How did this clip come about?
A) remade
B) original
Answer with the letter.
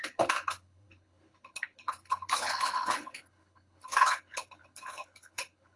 A